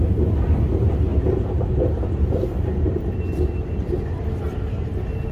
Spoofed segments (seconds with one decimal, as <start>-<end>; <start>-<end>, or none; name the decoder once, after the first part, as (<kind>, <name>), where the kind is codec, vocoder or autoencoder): none